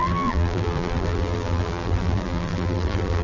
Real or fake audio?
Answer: fake